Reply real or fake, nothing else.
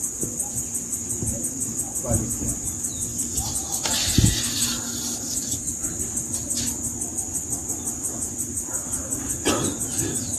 real